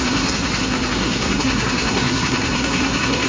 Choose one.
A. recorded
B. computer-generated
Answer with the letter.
B